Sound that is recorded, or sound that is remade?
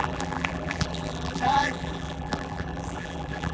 remade